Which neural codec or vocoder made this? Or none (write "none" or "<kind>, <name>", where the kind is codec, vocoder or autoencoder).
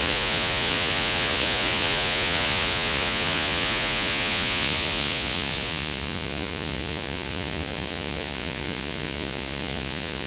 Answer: vocoder, Vocos